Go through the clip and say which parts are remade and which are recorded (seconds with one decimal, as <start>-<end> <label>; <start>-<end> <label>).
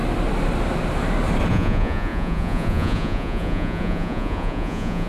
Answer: 0.0-1.5 recorded; 1.5-5.1 remade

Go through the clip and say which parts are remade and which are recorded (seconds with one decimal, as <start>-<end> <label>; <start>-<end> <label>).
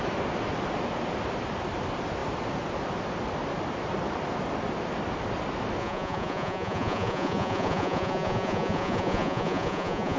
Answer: 0.0-5.8 recorded; 5.8-10.2 remade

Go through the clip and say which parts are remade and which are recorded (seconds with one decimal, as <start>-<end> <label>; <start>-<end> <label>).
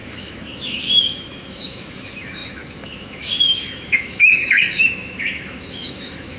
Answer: 0.0-6.4 remade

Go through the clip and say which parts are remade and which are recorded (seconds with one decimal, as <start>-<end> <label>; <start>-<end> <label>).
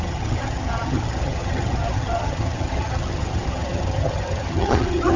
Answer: 0.0-5.2 remade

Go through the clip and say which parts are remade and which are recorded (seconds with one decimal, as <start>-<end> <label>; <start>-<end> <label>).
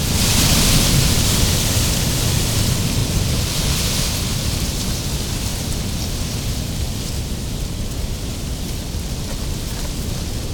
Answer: 0.0-3.0 remade; 3.0-4.3 recorded; 4.3-5.5 remade; 5.5-9.1 recorded; 9.1-10.5 remade